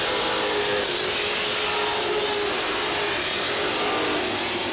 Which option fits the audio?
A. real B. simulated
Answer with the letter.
A